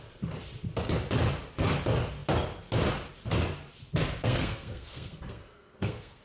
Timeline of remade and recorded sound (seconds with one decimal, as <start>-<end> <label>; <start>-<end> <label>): 0.0-4.2 recorded; 4.2-6.2 remade